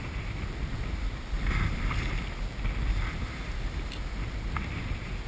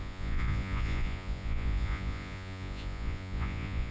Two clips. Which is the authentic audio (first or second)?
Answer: first